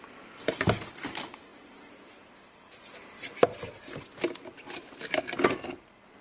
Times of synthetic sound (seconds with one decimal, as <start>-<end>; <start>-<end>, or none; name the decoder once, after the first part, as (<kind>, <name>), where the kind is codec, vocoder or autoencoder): none